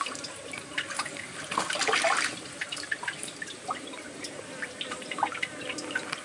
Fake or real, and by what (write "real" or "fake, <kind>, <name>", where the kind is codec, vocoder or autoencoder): real